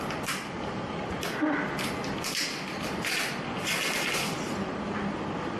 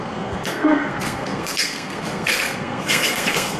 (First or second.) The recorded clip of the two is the first